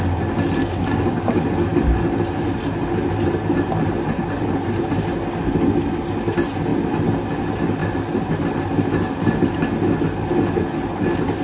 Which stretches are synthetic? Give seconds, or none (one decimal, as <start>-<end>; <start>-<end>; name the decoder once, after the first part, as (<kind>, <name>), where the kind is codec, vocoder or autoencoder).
0.6-1.4 (codec, DAC)